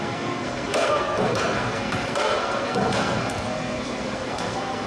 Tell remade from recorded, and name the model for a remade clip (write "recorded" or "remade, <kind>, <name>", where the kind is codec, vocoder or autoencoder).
remade, codec, SNAC